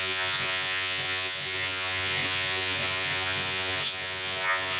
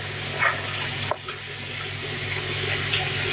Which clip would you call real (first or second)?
second